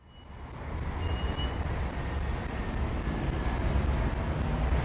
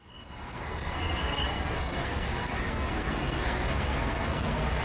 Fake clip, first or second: second